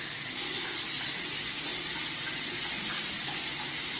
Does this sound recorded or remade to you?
recorded